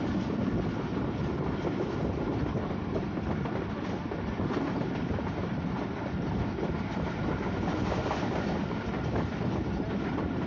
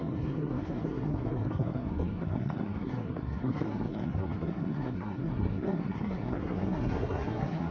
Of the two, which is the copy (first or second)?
second